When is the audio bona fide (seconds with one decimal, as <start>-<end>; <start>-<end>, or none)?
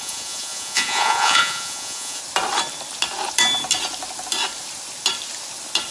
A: 2.2-5.9